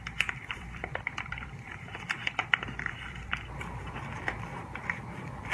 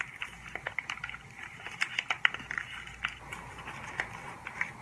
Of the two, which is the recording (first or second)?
second